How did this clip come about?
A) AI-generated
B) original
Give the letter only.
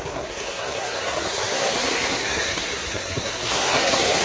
A